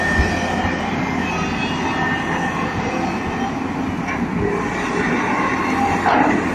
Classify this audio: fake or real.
real